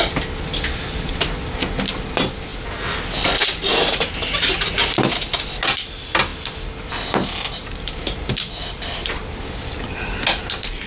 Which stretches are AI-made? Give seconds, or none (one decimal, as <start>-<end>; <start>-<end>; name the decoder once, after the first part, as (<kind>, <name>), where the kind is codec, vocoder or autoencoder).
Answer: 7.6-9.2 (vocoder, BigVGAN v2)